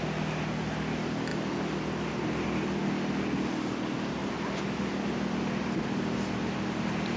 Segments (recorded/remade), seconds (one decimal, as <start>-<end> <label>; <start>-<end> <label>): 0.0-7.2 recorded